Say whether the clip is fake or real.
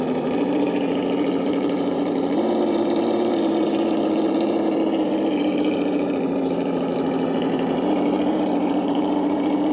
fake